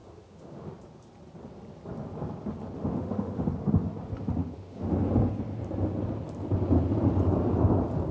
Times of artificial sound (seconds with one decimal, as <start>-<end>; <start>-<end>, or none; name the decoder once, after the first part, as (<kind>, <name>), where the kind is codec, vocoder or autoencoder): 0.0-0.7 (autoencoder, DAC-VAE); 2.8-3.5; 4.4-5.1